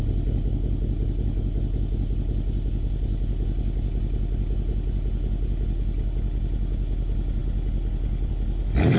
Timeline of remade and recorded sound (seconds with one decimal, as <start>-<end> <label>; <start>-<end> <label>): 0.0-7.4 recorded; 7.4-8.3 remade; 8.3-9.0 recorded